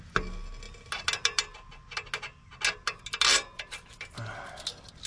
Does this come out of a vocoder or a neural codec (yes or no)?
no